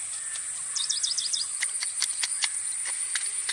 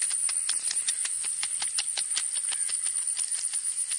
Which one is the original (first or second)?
second